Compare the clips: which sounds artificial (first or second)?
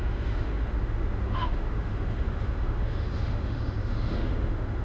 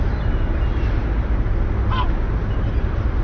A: first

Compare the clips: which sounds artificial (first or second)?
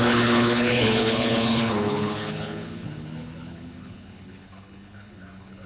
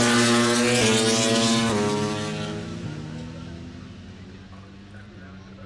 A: first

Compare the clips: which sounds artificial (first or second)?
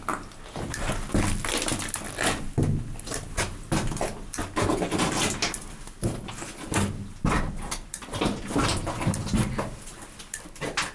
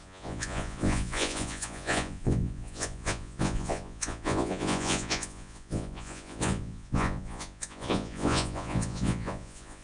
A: second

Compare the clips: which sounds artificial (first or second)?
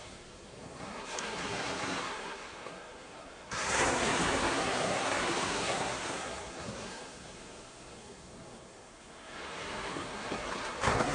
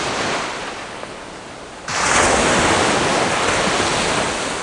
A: first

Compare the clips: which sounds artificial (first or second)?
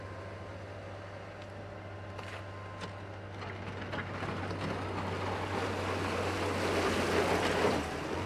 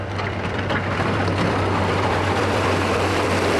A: second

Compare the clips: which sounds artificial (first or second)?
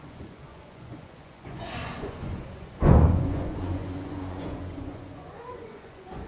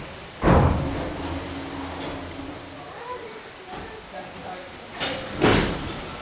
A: first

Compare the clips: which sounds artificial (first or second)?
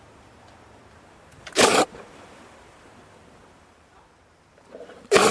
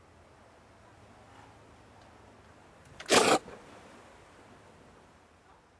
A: first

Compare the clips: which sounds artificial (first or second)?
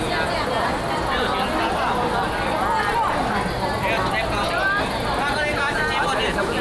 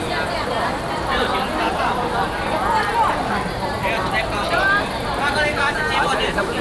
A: second